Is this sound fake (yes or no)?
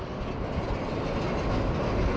no